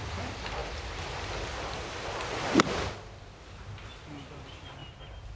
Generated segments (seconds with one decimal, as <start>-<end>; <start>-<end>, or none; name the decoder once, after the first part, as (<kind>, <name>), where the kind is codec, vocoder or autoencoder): none